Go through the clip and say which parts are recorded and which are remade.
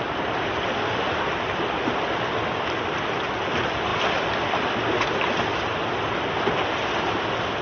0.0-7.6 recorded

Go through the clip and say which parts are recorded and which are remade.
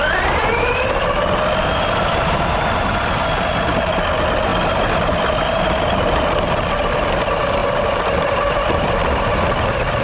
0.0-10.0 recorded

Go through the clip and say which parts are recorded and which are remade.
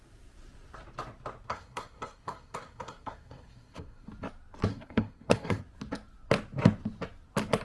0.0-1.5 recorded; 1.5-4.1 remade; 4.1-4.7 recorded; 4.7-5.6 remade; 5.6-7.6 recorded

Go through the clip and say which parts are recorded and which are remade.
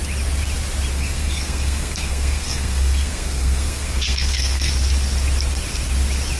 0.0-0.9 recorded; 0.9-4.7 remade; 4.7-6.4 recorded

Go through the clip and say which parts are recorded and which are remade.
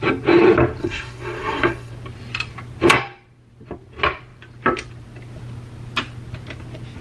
0.0-0.8 recorded; 0.8-1.9 remade; 1.9-7.0 recorded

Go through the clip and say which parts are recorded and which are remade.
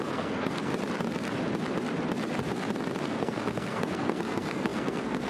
0.0-0.7 remade; 0.7-3.0 recorded; 3.0-5.3 remade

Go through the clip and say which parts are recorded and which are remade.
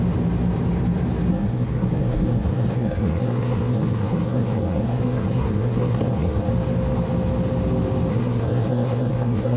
0.0-1.3 recorded; 1.3-6.5 remade; 6.5-8.1 recorded; 8.1-9.6 remade